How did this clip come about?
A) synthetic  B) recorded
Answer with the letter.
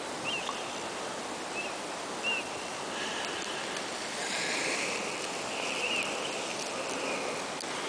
B